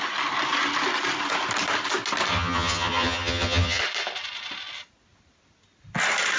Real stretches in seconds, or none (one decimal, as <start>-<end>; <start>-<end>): 0.0-2.3; 3.8-6.4